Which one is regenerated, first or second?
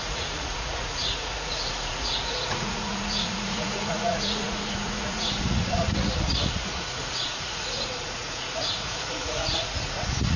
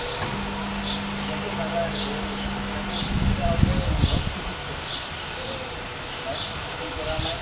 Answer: first